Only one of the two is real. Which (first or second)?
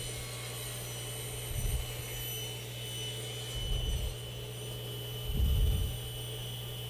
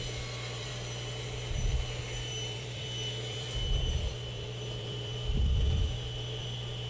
first